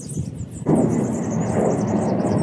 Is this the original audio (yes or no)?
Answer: yes